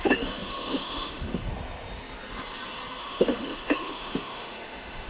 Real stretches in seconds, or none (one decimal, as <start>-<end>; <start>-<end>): 1.5-3.0